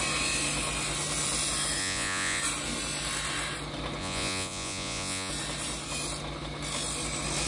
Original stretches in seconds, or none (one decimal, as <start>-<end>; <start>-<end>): 0.0-1.8; 2.4-4.0; 5.3-7.5